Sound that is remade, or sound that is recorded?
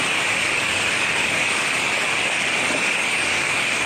remade